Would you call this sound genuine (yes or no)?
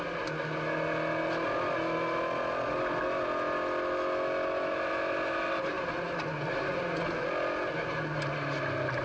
yes